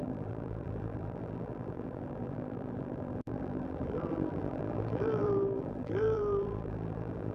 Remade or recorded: remade